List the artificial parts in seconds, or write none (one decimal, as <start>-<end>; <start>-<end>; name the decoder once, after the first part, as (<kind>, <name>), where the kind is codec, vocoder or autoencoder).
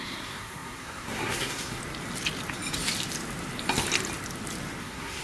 0.0-1.8 (codec, SNAC); 4.8-5.2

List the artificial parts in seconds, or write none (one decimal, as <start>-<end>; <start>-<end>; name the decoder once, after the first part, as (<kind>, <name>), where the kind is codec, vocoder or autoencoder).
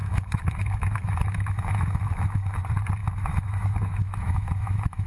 0.0-2.6 (autoencoder, DAC-VAE); 3.0-5.1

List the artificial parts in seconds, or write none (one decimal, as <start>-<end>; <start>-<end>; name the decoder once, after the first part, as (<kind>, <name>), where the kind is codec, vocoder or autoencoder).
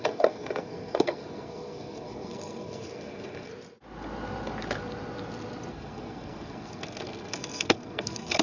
0.0-3.5 (codec, SNAC); 5.7-8.4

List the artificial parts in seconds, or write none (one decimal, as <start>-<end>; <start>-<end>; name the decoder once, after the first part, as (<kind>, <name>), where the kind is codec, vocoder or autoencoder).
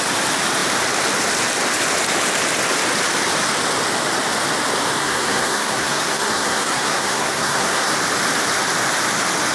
5.0-7.9 (codec, SNAC)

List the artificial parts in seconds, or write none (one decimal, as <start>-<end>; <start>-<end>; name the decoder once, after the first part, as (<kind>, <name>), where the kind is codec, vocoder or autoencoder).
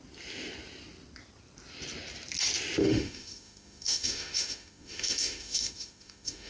2.8-6.5 (autoencoder, DAC-VAE)